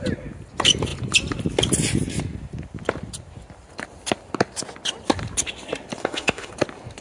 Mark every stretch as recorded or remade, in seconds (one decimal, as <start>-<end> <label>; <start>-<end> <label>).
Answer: 0.0-6.0 recorded; 6.0-6.5 remade; 6.5-7.0 recorded